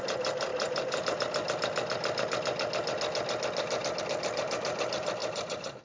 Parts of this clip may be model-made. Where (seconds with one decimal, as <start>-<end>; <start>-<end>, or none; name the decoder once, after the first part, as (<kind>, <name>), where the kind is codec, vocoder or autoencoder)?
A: 0.0-0.5 (vocoder, BigVGAN v2); 4.0-5.8